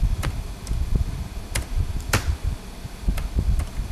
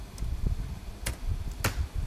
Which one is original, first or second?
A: second